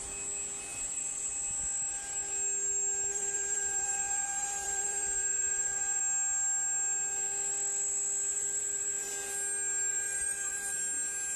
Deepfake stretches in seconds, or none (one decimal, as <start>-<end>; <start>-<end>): 0.7-1.3; 3.1-6.0; 8.3-9.1; 9.9-10.8